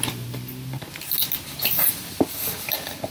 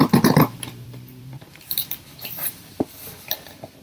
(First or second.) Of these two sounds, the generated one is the second